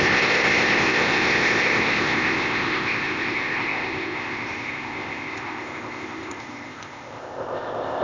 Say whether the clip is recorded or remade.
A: remade